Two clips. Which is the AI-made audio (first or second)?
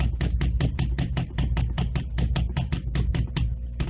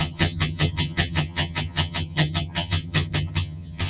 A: second